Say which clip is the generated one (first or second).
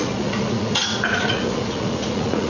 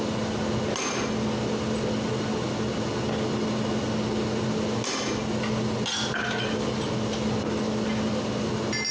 first